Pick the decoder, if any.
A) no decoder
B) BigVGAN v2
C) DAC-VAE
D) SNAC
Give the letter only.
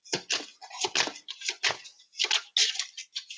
A